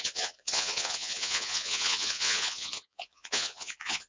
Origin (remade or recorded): remade